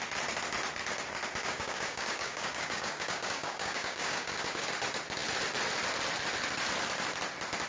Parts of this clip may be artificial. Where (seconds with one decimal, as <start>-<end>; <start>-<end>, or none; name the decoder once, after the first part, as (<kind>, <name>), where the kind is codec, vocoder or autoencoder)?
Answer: 1.4-4.6 (codec, DAC)